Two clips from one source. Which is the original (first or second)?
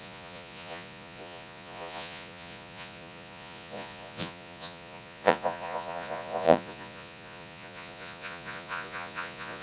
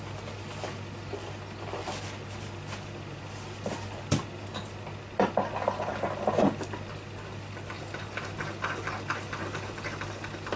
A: second